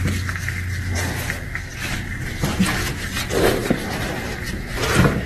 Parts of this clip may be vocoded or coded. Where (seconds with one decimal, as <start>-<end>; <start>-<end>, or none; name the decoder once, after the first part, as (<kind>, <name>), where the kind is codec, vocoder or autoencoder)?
3.6-4.1 (vocoder, BigVGAN v2)